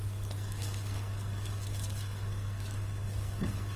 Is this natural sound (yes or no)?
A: no